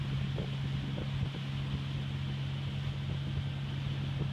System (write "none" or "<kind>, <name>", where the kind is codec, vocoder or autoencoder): none